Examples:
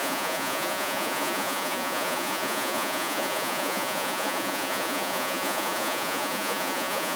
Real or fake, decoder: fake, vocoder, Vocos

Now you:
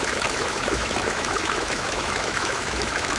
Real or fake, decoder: fake, autoencoder, DAC-VAE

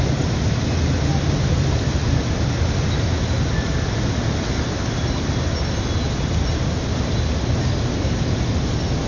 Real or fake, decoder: real